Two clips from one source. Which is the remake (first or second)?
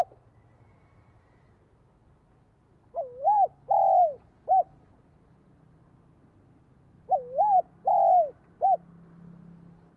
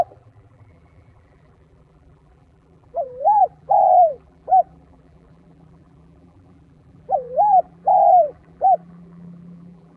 second